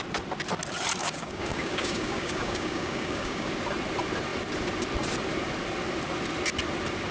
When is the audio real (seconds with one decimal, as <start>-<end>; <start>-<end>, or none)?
0.0-1.0; 3.5-7.1